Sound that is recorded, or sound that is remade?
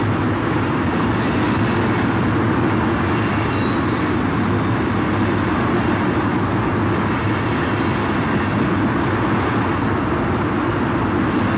recorded